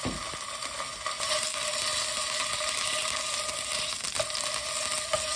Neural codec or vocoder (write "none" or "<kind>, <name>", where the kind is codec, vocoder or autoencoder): none